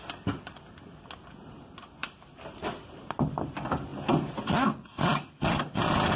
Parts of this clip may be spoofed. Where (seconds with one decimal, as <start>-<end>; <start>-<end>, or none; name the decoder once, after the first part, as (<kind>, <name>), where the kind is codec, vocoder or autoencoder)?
2.0-3.4 (vocoder, BigVGAN v2)

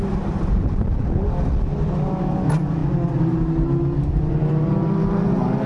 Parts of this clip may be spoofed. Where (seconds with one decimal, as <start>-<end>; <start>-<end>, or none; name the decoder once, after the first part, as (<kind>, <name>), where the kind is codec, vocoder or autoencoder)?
none

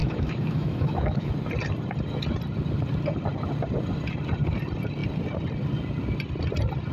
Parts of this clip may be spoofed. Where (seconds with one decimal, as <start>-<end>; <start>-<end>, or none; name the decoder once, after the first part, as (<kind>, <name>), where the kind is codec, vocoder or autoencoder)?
0.0-1.3 (autoencoder, DAC-VAE)